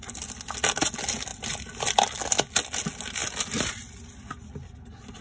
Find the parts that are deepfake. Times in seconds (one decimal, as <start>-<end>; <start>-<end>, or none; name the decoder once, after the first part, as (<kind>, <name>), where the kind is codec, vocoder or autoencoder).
none

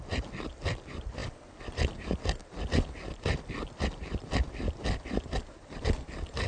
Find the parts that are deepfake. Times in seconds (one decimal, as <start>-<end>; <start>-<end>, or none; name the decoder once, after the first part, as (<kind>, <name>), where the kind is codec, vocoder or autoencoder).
none

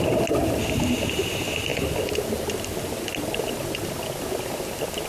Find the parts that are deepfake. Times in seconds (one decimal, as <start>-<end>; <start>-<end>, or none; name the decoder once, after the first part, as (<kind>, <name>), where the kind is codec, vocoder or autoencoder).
none